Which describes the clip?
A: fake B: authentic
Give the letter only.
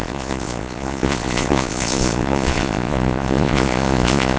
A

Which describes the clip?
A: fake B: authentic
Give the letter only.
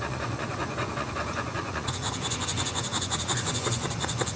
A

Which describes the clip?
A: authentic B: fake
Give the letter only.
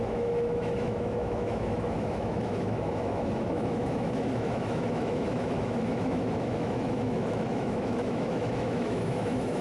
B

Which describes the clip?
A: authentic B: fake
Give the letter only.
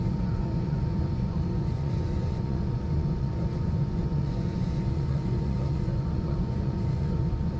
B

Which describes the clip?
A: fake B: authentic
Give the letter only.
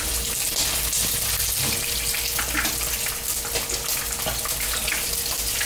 B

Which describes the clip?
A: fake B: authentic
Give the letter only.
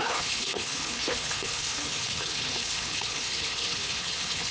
A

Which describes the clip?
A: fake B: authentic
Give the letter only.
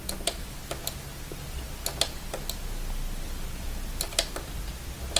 B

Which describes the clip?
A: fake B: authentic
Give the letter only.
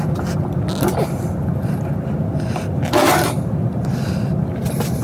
B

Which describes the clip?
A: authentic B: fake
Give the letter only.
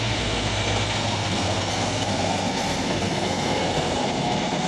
B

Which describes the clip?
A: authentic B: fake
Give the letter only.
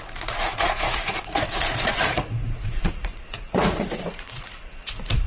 B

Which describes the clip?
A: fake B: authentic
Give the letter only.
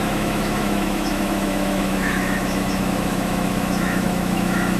A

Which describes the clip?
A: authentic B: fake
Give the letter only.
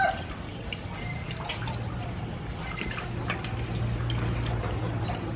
A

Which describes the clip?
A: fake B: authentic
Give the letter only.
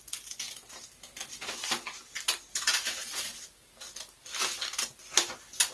B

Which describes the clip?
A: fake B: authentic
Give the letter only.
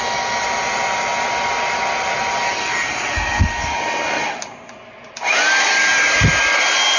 B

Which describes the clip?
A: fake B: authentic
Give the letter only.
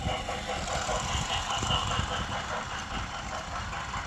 B